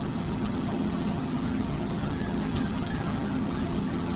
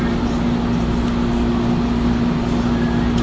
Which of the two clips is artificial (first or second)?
first